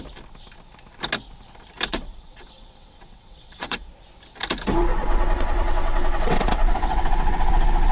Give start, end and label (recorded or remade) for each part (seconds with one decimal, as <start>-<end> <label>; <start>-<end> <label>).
0.0-1.9 recorded; 1.9-3.9 remade; 3.9-4.9 recorded; 4.9-7.5 remade; 7.5-7.9 recorded